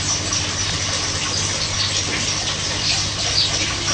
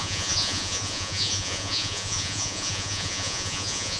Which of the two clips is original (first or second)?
first